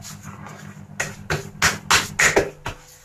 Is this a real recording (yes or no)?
yes